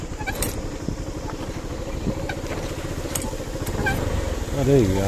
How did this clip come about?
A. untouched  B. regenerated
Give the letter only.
A